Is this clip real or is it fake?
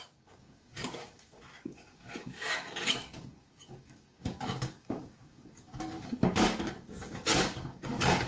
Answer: fake